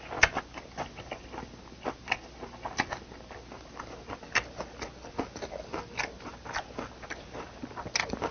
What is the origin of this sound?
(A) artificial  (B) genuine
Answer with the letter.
B